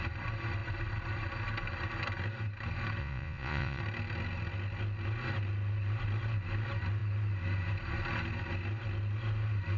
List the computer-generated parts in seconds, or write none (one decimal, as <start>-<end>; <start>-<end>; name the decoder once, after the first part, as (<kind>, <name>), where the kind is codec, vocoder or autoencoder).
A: 3.0-3.8 (vocoder, Vocos)